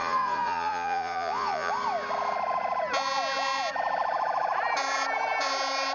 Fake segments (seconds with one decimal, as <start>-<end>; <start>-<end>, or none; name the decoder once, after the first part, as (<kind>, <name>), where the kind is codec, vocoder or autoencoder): 0.0-1.7 (vocoder, Vocos)